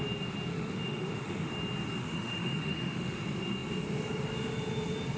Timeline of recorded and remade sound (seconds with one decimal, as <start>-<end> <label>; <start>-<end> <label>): 0.0-0.5 recorded; 0.5-1.5 remade; 1.5-2.0 recorded; 2.0-3.2 remade; 3.2-5.2 recorded

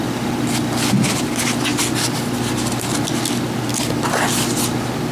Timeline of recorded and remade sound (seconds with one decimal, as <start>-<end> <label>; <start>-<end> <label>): 0.0-5.1 recorded

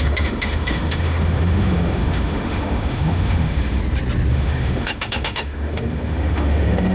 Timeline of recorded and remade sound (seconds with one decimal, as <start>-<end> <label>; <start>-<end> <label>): 0.0-3.8 remade; 3.8-4.3 recorded; 4.3-6.9 remade

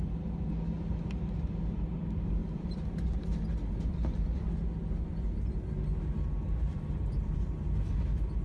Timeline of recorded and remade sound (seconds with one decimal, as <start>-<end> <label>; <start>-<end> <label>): 0.0-2.4 recorded; 2.4-3.0 remade; 3.0-8.4 recorded

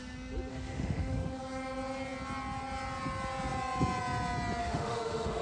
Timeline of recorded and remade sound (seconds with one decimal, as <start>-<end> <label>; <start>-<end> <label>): 0.0-0.5 recorded; 0.5-1.4 remade; 1.4-4.6 recorded; 4.6-5.4 remade

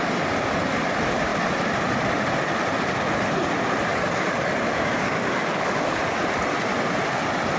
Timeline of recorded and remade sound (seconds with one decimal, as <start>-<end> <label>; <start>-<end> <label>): 0.0-3.9 recorded; 3.9-6.0 remade; 6.0-7.6 recorded

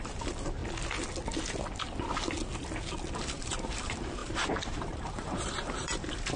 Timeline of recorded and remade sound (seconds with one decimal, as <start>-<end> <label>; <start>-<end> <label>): 0.0-0.6 remade; 0.6-3.1 recorded; 3.1-6.4 remade

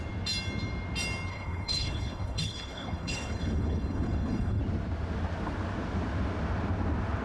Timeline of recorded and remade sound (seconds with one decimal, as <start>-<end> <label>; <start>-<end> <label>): 0.0-1.3 recorded; 1.3-4.6 remade; 4.6-7.2 recorded